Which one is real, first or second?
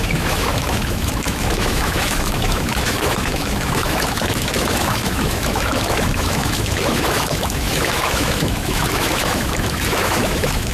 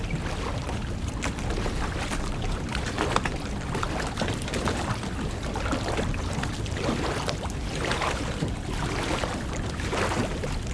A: second